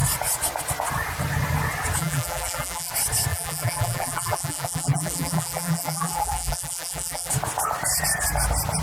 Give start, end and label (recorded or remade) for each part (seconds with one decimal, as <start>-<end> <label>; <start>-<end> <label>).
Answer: 0.0-2.0 recorded; 2.0-2.9 remade; 2.9-3.3 recorded; 3.3-7.3 remade; 7.3-8.8 recorded